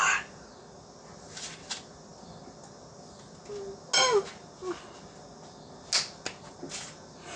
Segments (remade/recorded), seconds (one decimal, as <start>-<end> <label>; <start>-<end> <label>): 0.0-7.4 recorded